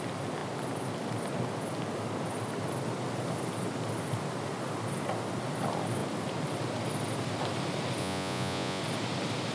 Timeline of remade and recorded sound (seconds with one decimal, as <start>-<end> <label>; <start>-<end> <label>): 0.0-8.0 recorded; 8.0-8.8 remade; 8.8-9.5 recorded